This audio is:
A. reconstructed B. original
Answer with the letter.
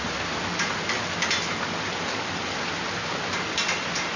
B